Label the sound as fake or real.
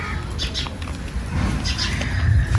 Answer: real